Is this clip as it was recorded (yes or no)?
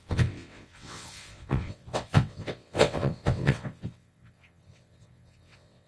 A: no